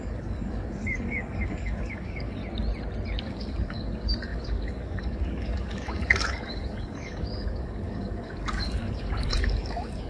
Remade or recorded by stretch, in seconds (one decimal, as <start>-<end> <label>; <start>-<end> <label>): 0.0-2.4 remade; 2.4-3.2 recorded; 3.2-10.1 remade